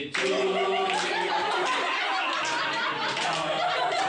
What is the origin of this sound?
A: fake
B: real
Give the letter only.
B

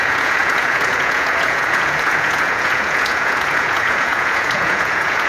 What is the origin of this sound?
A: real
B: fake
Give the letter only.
B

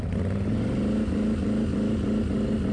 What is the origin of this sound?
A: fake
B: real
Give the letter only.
B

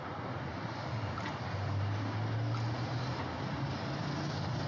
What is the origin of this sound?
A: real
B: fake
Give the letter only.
A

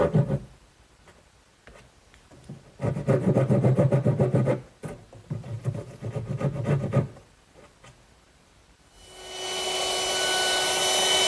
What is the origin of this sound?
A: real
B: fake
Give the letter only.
A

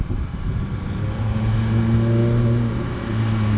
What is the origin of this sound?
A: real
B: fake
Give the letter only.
A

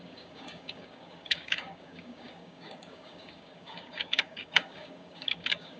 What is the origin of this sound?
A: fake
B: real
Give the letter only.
A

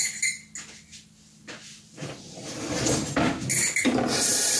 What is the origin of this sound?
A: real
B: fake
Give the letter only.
A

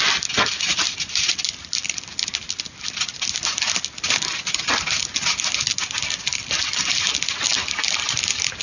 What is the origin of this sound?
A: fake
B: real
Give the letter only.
B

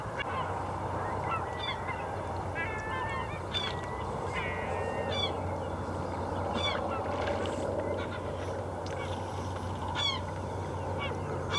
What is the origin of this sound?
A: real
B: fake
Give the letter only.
A